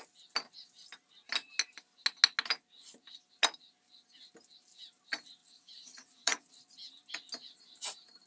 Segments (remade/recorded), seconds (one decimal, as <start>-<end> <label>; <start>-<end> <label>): 0.0-5.4 recorded; 5.4-6.5 remade; 6.5-8.3 recorded